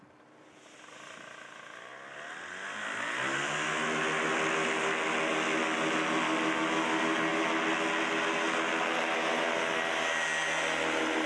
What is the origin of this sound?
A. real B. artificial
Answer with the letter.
A